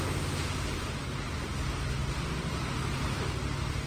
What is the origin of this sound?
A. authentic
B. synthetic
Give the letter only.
A